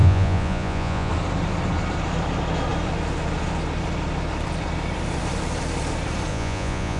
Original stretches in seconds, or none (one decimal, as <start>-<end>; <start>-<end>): 1.1-6.3